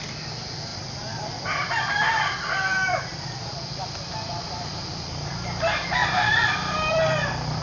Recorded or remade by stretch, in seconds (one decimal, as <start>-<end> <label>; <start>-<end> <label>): 0.0-0.7 recorded; 0.7-5.3 remade; 5.3-6.0 recorded; 6.0-7.6 remade